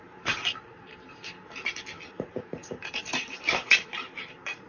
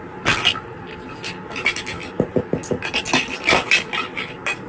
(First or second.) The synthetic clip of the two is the first